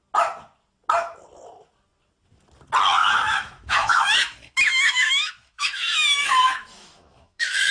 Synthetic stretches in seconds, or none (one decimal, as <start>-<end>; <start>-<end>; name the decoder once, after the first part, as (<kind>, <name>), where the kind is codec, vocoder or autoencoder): 3.0-7.7 (autoencoder, DAC-VAE)